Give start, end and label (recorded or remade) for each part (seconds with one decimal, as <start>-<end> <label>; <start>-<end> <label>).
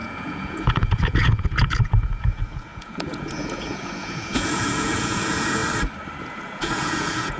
0.0-5.6 remade; 5.6-6.2 recorded; 6.2-7.4 remade